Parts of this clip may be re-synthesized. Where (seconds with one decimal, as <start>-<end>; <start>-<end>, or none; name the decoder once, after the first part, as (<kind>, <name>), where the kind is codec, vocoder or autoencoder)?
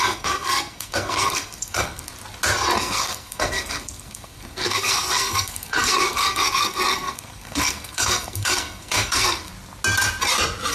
0.0-2.1 (codec, SNAC); 2.8-9.5